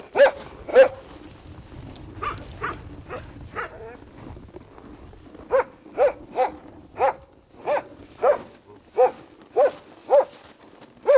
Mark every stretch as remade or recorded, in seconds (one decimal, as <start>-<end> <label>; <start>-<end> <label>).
0.0-7.9 recorded; 7.9-8.6 remade; 8.6-11.2 recorded